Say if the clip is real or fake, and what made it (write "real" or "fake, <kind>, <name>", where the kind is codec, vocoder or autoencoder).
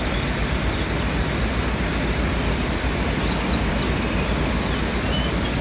real